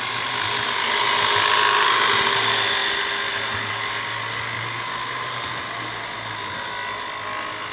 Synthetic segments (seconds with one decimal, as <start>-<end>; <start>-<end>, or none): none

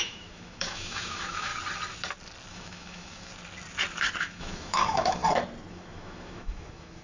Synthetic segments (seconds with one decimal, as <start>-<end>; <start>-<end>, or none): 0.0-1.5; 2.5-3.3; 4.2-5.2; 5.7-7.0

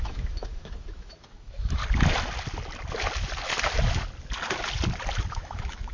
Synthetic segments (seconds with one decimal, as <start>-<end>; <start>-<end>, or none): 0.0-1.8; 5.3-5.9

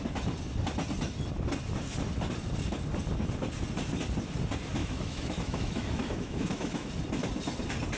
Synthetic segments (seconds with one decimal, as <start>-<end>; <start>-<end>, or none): 4.8-6.9

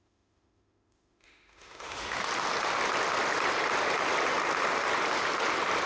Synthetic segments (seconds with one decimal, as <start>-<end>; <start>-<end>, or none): 0.0-2.2